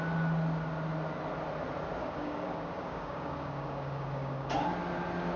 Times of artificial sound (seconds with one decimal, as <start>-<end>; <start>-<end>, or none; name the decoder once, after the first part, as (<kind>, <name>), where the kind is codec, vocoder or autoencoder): 2.0-4.5 (codec, DAC)